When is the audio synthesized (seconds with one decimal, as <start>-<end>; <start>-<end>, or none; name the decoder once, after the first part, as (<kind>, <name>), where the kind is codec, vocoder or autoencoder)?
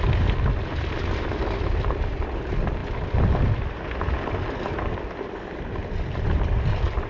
none